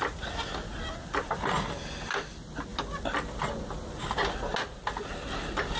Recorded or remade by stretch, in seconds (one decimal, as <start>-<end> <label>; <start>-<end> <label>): 0.0-5.8 recorded